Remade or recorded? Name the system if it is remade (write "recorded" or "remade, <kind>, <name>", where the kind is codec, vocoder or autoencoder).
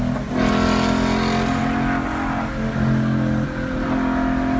recorded